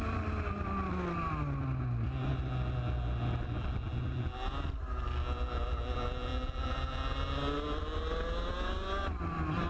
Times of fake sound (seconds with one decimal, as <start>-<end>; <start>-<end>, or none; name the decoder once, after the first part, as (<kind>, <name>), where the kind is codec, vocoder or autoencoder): none